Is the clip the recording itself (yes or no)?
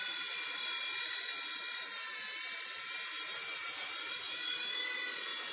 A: yes